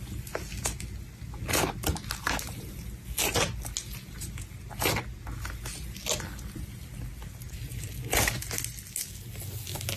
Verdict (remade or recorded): recorded